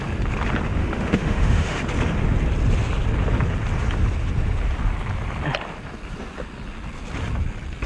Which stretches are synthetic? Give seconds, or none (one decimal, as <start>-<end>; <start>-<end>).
0.8-1.8